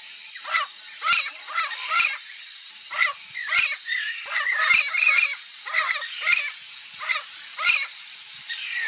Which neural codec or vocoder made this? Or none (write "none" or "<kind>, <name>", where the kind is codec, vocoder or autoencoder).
none